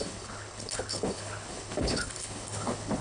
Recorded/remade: remade